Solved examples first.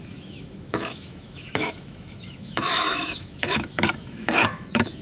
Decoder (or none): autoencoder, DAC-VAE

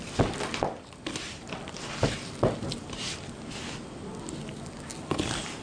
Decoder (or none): none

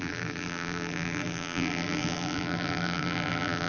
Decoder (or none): vocoder, BigVGAN v2